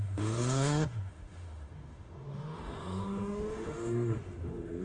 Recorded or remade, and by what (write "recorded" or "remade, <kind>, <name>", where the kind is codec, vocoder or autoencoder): remade, autoencoder, DAC-VAE